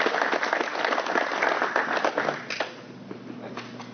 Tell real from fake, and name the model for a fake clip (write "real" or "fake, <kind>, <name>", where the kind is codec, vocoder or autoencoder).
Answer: real